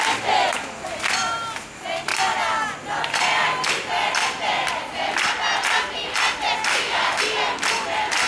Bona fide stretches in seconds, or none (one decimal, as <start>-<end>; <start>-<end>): 0.0-6.7; 7.2-8.3